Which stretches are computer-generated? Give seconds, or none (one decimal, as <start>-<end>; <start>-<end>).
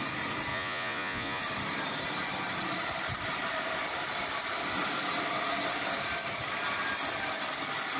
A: 0.5-1.4